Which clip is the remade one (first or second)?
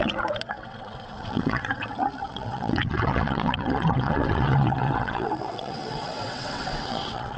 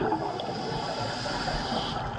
first